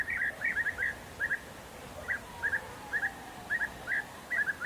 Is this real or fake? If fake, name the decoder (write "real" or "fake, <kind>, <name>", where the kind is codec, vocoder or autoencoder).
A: real